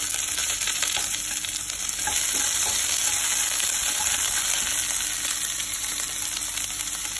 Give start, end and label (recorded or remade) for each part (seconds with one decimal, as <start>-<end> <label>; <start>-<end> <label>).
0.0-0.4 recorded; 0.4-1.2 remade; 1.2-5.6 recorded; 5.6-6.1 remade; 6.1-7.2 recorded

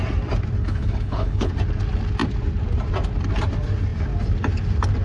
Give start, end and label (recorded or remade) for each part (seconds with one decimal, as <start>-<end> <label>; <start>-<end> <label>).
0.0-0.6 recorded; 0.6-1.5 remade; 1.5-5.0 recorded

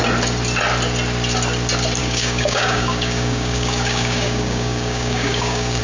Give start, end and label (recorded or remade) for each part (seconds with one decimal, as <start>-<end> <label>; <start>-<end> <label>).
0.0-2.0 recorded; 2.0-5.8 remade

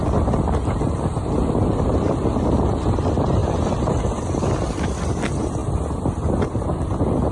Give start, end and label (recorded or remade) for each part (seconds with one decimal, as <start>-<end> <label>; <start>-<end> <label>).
0.0-7.3 recorded